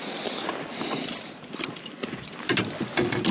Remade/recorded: recorded